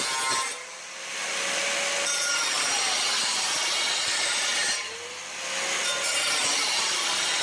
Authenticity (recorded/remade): recorded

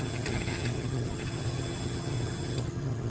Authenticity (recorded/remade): remade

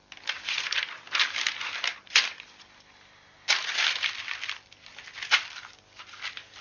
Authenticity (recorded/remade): recorded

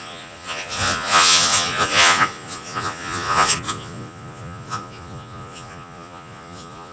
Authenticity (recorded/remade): remade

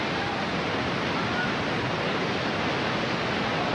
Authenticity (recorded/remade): recorded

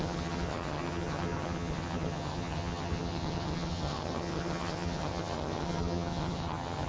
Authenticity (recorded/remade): remade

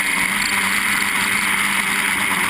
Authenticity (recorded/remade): recorded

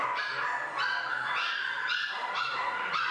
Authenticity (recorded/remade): recorded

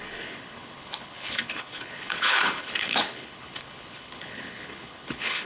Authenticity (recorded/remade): remade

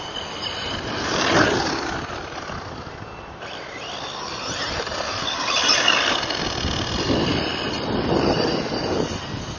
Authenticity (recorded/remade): recorded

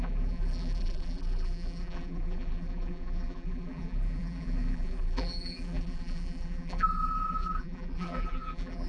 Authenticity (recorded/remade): remade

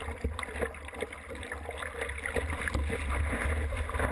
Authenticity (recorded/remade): recorded